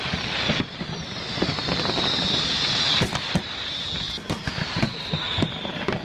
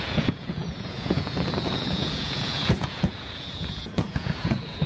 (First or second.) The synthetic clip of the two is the second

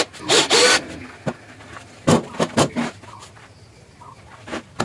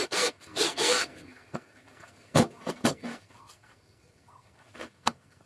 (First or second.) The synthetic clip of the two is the second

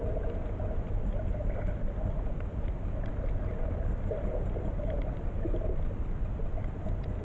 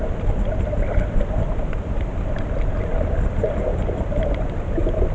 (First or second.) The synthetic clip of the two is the second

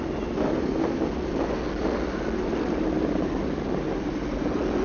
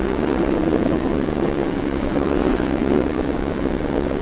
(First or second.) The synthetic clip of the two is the second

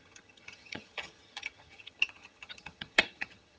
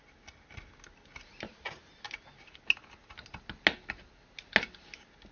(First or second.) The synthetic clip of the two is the first